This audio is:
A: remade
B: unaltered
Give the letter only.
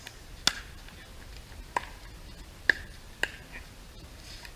B